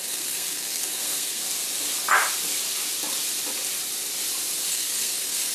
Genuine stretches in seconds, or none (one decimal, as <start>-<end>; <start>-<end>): 1.4-4.7

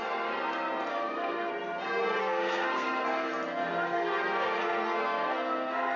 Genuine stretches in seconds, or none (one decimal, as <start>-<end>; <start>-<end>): 0.0-0.9; 1.5-2.2

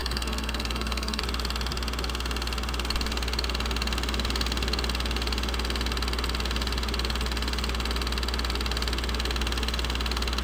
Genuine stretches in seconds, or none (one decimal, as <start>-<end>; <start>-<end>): 1.2-10.4

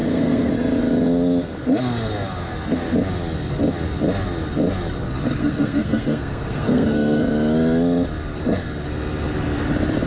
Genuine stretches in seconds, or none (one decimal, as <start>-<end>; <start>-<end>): 0.5-5.4; 7.2-10.1

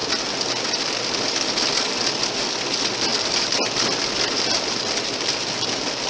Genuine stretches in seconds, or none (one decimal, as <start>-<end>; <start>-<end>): 0.0-6.1

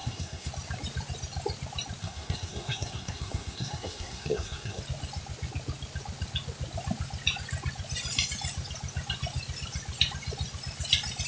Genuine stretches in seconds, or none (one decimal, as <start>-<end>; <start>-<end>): 0.5-2.0; 4.8-11.3

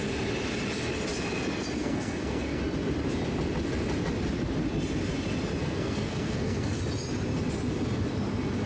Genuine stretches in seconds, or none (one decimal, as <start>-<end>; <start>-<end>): 0.0-1.8; 2.6-5.6; 6.8-8.7